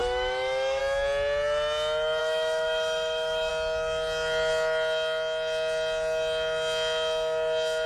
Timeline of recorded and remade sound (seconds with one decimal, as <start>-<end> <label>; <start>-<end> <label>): 0.0-0.8 remade; 0.8-2.2 recorded; 2.2-3.5 remade; 3.5-7.9 recorded